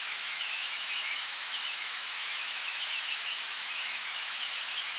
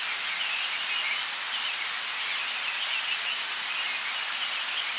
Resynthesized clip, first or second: first